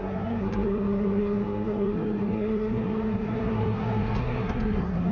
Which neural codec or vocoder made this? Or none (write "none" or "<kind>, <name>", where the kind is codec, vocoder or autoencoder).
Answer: codec, SNAC